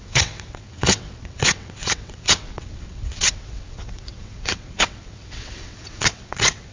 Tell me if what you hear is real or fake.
fake